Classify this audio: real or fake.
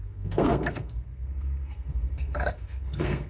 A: fake